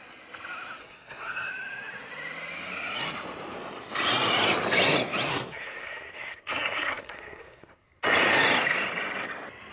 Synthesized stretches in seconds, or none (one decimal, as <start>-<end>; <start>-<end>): 0.8-1.5; 5.3-8.0